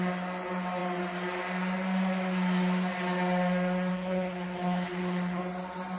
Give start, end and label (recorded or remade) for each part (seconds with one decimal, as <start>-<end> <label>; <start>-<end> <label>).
0.0-3.9 recorded; 3.9-5.4 remade; 5.4-6.0 recorded